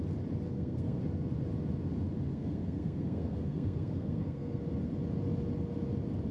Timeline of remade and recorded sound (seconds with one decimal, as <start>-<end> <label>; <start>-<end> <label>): 0.0-0.5 recorded; 0.5-1.0 remade; 1.0-2.3 recorded; 2.3-4.6 remade; 4.6-6.3 recorded